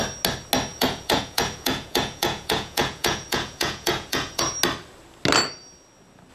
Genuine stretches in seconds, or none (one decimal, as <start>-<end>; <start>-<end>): 0.0-0.7; 4.4-6.3